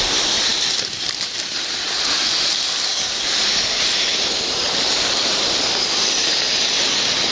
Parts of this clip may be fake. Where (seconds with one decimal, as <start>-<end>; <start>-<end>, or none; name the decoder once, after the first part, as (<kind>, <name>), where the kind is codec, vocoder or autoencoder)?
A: none